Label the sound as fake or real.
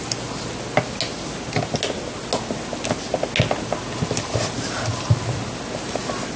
real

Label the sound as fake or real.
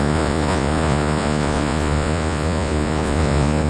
fake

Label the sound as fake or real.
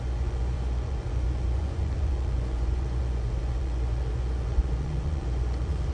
fake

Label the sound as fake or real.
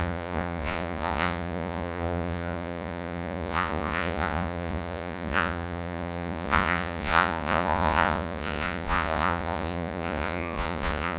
fake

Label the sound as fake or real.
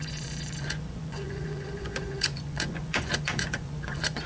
fake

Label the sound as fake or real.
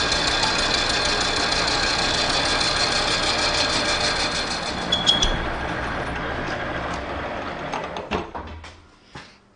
real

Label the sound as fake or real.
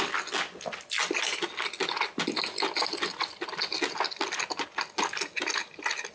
real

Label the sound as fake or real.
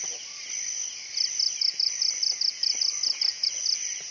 real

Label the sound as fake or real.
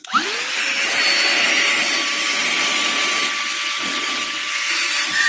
real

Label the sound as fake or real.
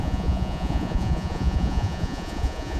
fake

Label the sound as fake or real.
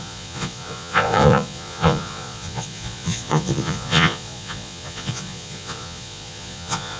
fake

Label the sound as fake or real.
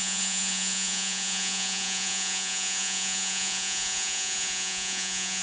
fake